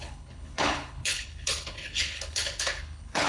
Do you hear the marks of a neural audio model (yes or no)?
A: yes